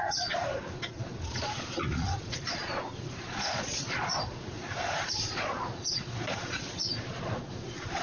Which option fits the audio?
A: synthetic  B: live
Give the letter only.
A